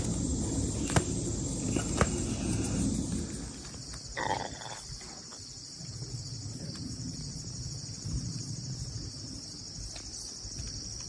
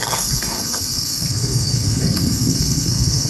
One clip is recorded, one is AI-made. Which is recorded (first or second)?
first